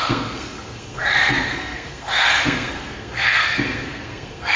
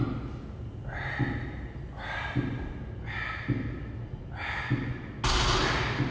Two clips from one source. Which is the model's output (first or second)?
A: first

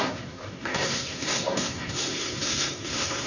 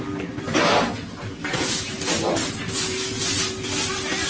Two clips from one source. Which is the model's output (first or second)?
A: first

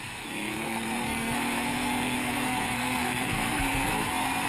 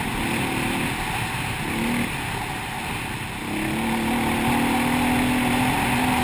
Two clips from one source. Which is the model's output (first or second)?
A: first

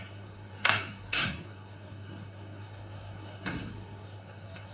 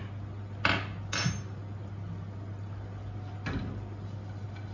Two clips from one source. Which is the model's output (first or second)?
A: first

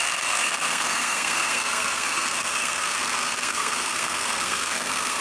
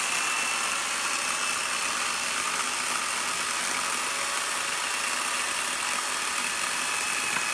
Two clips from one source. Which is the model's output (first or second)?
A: first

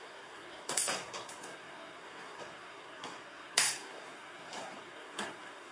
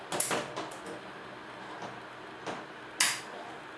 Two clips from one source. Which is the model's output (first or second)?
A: first